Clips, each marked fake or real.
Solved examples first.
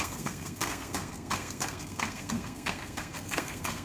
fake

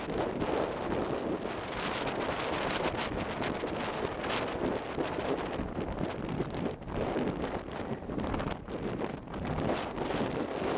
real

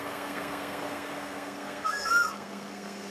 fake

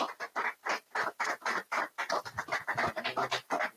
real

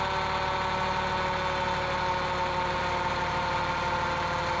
real